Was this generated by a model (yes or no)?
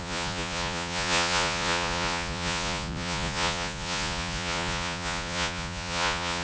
yes